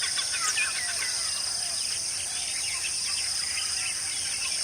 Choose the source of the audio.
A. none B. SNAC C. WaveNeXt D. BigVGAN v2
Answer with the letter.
A